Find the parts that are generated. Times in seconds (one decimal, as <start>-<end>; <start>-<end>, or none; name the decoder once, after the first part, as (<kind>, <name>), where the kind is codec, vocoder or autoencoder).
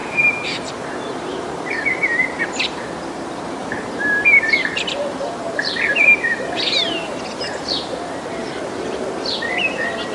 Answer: 0.0-0.7 (vocoder, BigVGAN v2); 1.3-2.8; 3.6-8.1